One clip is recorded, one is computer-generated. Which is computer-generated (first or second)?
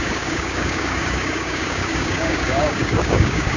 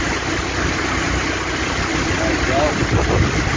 first